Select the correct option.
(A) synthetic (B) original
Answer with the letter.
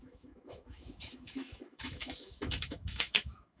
A